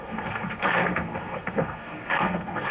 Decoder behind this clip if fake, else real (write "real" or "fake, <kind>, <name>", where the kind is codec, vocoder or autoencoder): fake, codec, SNAC